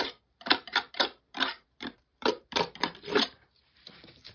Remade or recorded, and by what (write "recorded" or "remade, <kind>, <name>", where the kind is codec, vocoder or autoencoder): remade, vocoder, BigVGAN v2